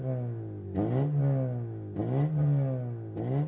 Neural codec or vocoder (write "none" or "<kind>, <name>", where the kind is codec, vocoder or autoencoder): none